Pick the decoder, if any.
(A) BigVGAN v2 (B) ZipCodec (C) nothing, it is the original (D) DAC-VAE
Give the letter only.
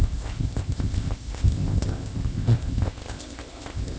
B